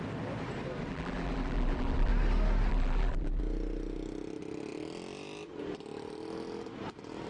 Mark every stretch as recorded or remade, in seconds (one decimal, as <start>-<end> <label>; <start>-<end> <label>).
0.0-0.9 recorded; 0.9-2.1 remade; 2.1-2.7 recorded; 2.7-3.4 remade; 3.4-7.3 recorded